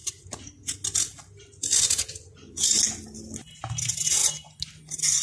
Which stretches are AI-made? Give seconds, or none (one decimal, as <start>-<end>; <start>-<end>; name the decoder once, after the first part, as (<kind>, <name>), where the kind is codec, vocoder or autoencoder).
none